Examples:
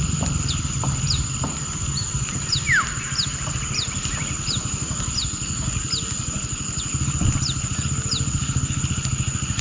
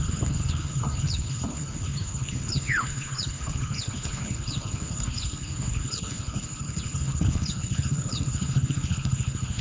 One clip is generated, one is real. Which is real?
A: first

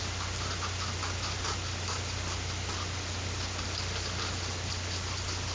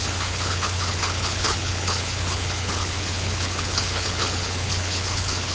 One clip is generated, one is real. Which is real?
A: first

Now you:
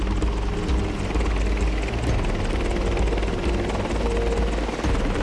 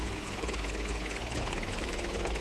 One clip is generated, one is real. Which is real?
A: first